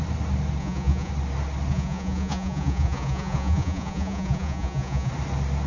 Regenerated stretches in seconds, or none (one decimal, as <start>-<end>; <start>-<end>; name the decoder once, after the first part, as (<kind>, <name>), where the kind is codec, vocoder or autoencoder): 0.6-1.1 (vocoder, Vocos); 1.7-5.1